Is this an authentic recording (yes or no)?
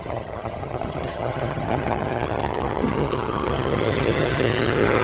no